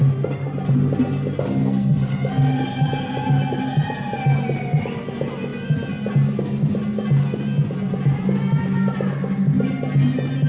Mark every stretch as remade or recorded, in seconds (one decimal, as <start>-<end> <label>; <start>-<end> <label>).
0.0-1.6 recorded; 1.6-2.6 remade; 2.6-10.5 recorded